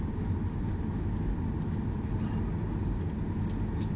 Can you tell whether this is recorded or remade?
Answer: recorded